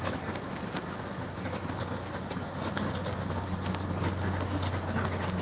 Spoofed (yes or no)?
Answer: no